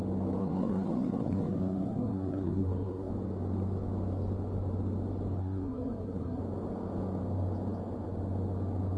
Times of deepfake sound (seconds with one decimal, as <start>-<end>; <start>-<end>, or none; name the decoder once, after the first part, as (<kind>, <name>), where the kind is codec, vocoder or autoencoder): 0.4-3.1 (codec, SNAC); 5.4-6.4

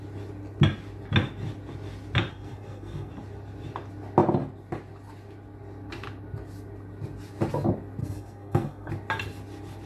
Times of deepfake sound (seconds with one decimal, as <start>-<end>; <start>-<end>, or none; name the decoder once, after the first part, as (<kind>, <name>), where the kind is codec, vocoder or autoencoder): 2.3-3.1 (codec, SNAC); 8.0-8.9

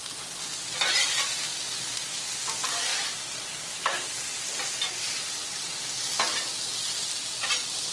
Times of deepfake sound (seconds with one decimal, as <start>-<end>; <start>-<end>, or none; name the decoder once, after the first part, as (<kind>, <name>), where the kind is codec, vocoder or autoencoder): none

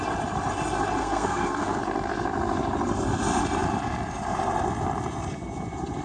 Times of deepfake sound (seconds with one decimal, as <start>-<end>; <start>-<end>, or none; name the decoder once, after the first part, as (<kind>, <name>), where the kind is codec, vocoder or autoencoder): 1.0-1.8 (codec, SNAC)

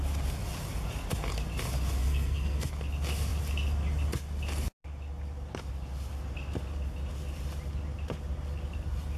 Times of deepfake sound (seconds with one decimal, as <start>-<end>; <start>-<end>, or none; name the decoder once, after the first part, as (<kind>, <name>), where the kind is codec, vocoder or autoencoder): 2.0-2.7 (codec, SNAC)

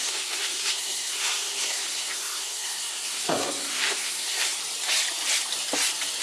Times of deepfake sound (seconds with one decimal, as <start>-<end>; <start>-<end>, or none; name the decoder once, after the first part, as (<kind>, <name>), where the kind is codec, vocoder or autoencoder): 0.0-4.6 (codec, SNAC)

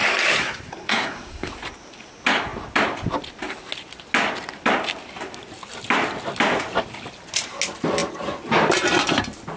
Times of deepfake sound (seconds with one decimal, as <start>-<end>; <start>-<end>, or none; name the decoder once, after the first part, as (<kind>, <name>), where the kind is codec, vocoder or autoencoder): 0.4-1.5 (codec, SNAC)

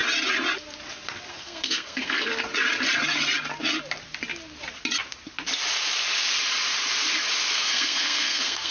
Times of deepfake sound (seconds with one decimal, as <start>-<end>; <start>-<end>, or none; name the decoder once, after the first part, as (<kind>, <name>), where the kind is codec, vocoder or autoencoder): 1.3-2.3 (codec, SNAC); 7.5-8.7